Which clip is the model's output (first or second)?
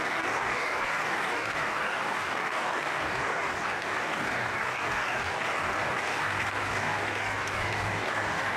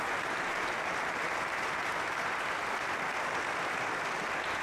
first